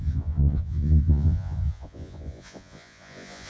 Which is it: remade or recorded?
remade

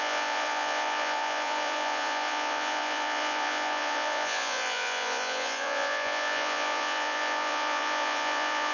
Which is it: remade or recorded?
remade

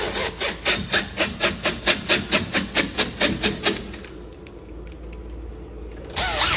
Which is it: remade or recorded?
recorded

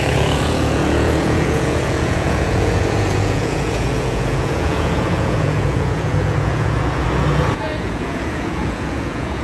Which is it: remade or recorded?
remade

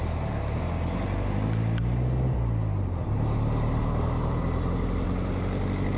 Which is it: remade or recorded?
recorded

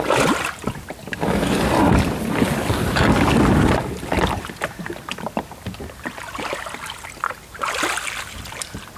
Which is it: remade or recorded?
recorded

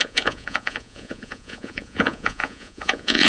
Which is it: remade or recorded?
remade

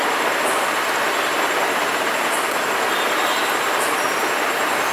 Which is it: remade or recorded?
recorded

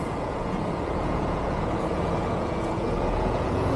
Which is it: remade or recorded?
remade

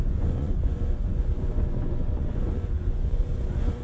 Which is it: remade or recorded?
remade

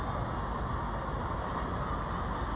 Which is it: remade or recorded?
recorded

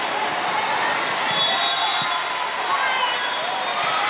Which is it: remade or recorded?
recorded